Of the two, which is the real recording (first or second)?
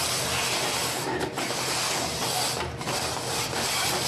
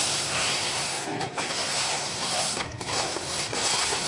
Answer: first